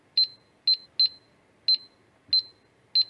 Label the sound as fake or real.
real